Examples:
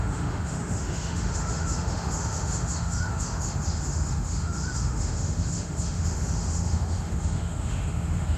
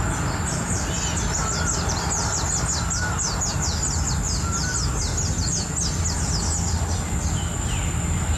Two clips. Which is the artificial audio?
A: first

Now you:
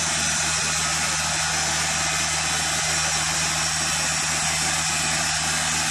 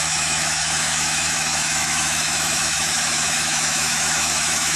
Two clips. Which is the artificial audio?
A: second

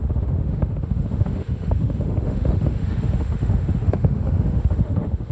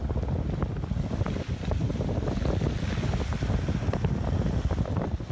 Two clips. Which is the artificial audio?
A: first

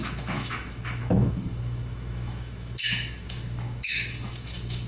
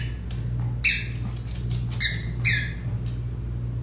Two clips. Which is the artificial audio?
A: first